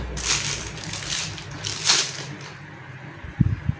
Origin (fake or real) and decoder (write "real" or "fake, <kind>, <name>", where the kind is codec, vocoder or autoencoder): real